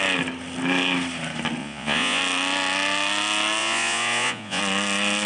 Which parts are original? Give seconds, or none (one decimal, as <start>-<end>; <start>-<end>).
0.0-1.6; 2.2-3.6; 4.6-5.3